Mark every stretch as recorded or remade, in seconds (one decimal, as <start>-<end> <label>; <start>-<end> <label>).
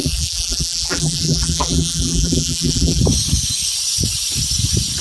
0.0-3.0 remade; 3.0-5.0 recorded